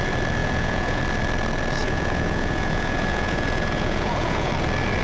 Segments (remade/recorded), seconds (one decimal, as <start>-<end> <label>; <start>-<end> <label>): 0.0-0.4 recorded; 0.4-1.0 remade; 1.0-1.8 recorded; 1.8-4.5 remade; 4.5-5.0 recorded